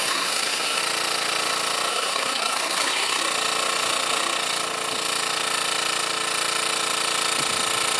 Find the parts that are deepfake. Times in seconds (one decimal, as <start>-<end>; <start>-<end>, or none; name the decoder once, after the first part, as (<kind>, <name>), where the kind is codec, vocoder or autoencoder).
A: 0.0-0.8 (codec, SNAC); 1.9-3.2